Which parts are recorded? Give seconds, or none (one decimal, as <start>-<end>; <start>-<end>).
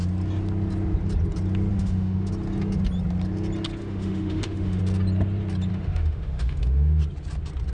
0.0-1.7; 2.3-3.8; 4.8-5.7; 7.0-7.7